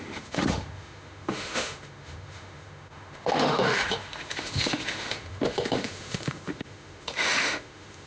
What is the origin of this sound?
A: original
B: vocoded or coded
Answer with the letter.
B